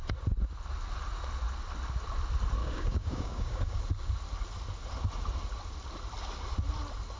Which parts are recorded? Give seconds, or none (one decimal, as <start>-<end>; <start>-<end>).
0.0-2.6; 3.8-7.2